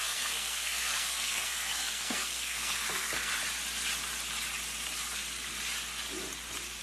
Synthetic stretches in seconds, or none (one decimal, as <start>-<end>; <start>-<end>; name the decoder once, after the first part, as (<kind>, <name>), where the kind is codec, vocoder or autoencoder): 0.0-3.3 (codec, SNAC)